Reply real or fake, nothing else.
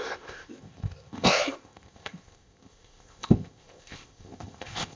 fake